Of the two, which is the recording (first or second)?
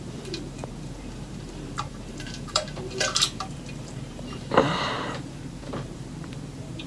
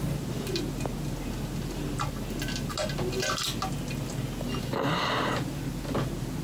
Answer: second